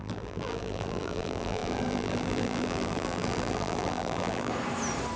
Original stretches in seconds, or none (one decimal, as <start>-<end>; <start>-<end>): 4.5-5.2